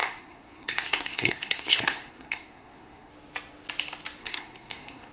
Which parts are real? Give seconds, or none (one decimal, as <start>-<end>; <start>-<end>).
3.1-4.2